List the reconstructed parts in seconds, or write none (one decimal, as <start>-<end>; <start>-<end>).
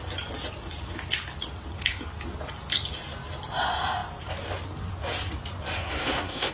5.8-6.5